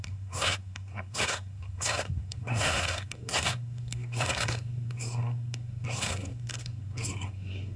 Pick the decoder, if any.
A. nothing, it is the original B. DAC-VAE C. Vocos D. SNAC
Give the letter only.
D